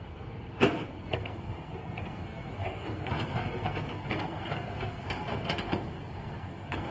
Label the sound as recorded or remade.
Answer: remade